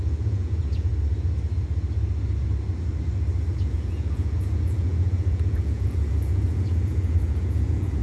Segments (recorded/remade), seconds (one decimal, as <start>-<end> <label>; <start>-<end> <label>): 0.0-0.9 remade; 0.9-3.6 recorded; 3.6-8.0 remade

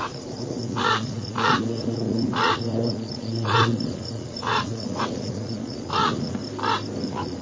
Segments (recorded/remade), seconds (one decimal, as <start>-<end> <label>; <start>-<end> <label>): 0.0-6.4 remade; 6.4-7.0 recorded; 7.0-7.4 remade

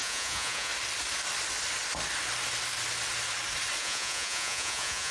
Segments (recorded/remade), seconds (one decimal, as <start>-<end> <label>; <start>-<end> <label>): 0.0-0.7 remade; 0.7-3.8 recorded; 3.8-5.1 remade

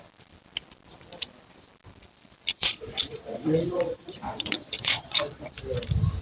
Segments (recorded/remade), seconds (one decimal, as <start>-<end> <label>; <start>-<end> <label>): 0.0-2.5 recorded; 2.5-5.5 remade; 5.5-6.2 recorded

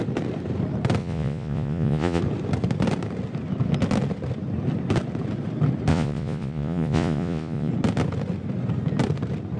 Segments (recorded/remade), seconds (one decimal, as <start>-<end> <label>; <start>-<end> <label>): 0.0-1.0 recorded; 1.0-2.2 remade; 2.2-5.9 recorded; 5.9-7.7 remade; 7.7-9.6 recorded

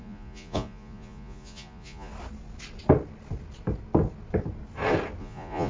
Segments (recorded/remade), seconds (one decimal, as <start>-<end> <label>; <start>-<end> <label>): 0.0-2.1 remade; 2.1-5.2 recorded; 5.2-5.7 remade

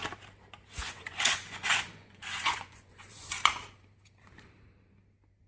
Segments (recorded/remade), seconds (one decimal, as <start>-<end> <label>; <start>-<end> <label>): 0.0-0.8 recorded; 0.8-3.6 remade; 3.6-5.5 recorded

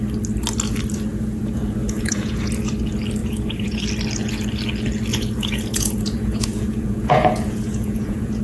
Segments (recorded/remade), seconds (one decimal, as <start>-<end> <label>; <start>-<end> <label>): 0.0-1.1 recorded; 1.1-2.5 remade; 2.5-3.2 recorded; 3.2-3.8 remade; 3.8-5.1 recorded; 5.1-8.4 remade